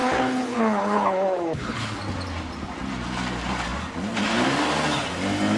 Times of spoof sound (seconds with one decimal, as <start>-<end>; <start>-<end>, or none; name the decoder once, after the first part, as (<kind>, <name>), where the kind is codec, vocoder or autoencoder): 0.0-2.0 (codec, HILCodec)